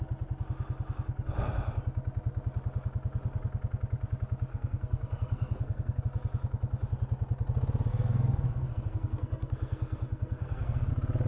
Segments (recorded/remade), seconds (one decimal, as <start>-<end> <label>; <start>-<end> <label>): 0.0-4.5 recorded; 4.5-6.0 remade; 6.0-7.9 recorded; 7.9-10.9 remade; 10.9-11.3 recorded